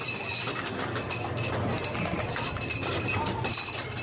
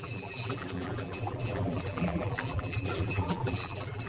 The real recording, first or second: first